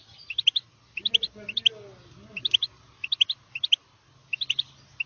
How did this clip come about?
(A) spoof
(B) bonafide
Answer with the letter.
B